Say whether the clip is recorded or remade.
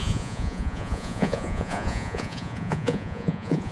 remade